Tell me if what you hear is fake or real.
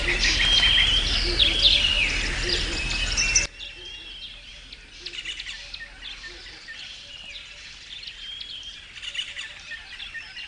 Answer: real